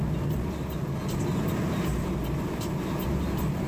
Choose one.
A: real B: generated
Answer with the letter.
A